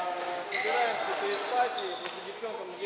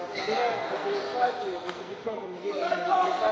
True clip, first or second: first